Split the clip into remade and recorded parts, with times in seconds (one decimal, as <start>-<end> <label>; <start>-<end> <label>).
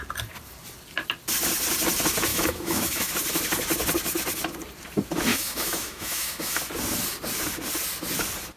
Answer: 0.0-2.3 recorded; 2.3-3.1 remade; 3.1-5.3 recorded; 5.3-6.6 remade; 6.6-8.6 recorded